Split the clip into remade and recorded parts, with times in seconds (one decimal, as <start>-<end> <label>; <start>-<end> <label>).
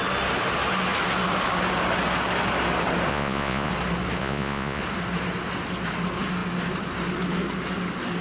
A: 0.0-3.1 recorded; 3.1-3.7 remade; 3.7-4.2 recorded; 4.2-4.8 remade; 4.8-8.2 recorded